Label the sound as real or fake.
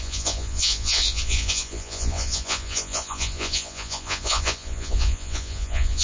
fake